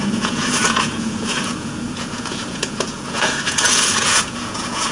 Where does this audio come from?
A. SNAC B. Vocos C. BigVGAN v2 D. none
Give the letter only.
B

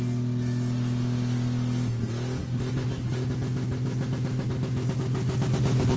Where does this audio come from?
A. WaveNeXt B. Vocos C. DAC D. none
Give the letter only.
D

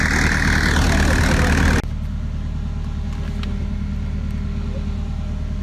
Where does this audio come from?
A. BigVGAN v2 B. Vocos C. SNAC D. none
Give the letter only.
D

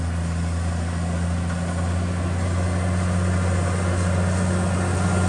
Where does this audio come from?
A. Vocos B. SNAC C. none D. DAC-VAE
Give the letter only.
C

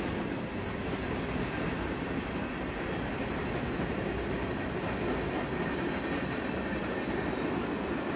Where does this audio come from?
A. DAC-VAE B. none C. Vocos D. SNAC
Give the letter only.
B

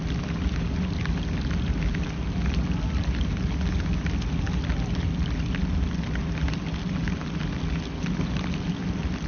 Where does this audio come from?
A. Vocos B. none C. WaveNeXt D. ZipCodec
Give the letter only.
B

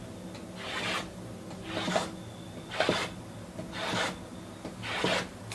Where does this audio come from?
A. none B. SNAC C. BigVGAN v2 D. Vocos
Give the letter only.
A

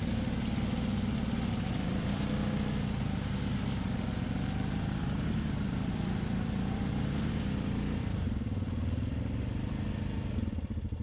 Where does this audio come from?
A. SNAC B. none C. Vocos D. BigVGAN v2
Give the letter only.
B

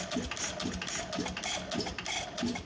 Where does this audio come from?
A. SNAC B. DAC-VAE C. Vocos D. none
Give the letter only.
D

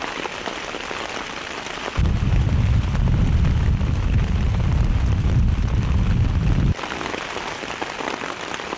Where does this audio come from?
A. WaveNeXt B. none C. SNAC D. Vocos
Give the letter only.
B